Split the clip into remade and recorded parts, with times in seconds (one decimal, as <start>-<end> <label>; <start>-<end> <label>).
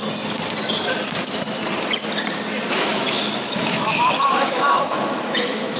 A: 0.0-2.9 recorded; 2.9-5.8 remade